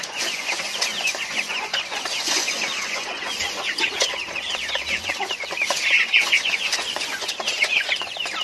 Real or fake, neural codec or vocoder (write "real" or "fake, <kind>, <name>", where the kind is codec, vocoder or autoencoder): fake, vocoder, Vocos